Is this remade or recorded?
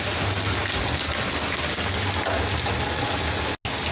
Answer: recorded